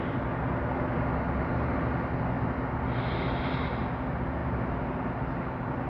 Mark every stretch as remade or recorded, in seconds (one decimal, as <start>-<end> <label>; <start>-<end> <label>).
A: 0.0-5.9 recorded